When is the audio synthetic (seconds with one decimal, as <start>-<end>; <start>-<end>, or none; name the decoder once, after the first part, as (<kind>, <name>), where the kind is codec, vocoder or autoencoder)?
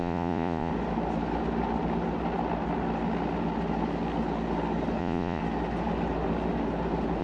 0.0-0.7 (vocoder, Vocos); 5.0-5.4